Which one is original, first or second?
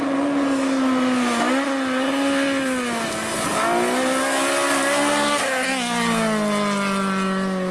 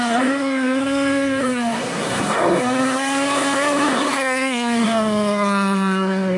first